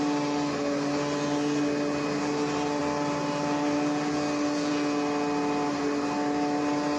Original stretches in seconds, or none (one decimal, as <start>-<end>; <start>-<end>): 0.0-7.0